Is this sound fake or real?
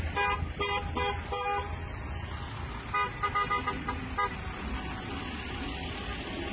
real